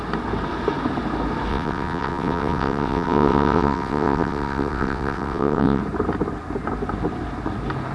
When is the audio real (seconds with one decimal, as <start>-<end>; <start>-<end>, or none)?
0.0-1.5; 5.8-7.9